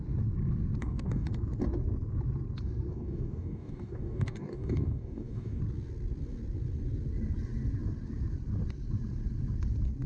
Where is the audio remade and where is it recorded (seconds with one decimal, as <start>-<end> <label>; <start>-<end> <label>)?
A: 0.0-0.8 recorded; 0.8-1.3 remade; 1.3-2.9 recorded; 2.9-5.6 remade; 5.6-10.1 recorded